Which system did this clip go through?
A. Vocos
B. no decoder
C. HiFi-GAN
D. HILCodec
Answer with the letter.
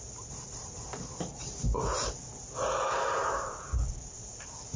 B